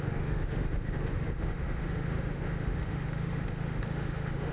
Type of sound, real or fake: fake